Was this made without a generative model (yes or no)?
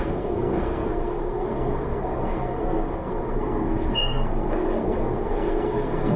no